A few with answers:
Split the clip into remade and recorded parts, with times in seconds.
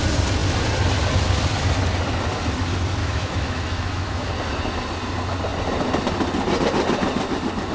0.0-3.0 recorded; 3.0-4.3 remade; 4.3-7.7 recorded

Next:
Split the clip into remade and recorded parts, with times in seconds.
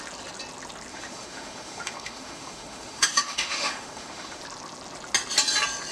0.0-0.9 recorded; 0.9-4.4 remade; 4.4-5.9 recorded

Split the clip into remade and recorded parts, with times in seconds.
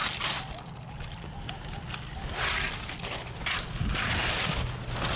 0.0-5.2 recorded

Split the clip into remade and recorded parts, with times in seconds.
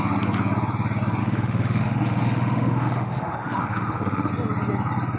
0.0-1.2 recorded; 1.2-4.3 remade; 4.3-5.2 recorded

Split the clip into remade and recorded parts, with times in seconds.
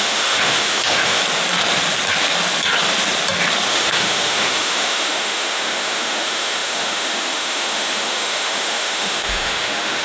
0.0-1.2 remade; 1.2-3.7 recorded; 3.7-10.0 remade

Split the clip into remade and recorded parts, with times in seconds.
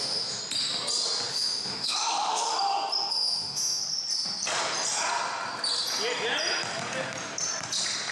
0.0-0.4 remade; 0.4-1.3 recorded; 1.3-2.5 remade; 2.5-3.1 recorded; 3.1-3.8 remade; 3.8-8.1 recorded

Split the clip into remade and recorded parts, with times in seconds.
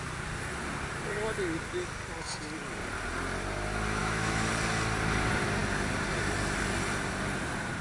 0.0-4.0 recorded; 4.0-4.5 remade; 4.5-7.8 recorded